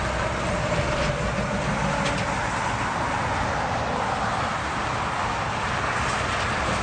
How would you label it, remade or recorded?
recorded